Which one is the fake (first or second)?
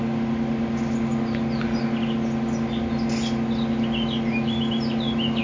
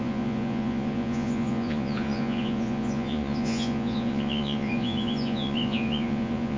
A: second